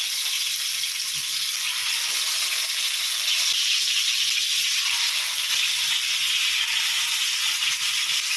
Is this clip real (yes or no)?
yes